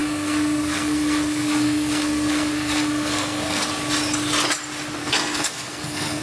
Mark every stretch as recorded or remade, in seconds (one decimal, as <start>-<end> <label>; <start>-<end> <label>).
0.0-3.7 remade; 3.7-5.0 recorded; 5.0-6.2 remade